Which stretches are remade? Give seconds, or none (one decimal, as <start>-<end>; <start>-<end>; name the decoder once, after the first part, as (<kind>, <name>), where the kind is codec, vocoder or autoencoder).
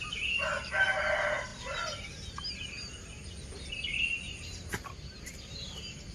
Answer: none